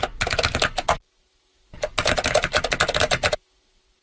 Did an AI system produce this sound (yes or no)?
no